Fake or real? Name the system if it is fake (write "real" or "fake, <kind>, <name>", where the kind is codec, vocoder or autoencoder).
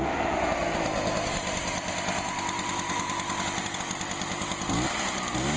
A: real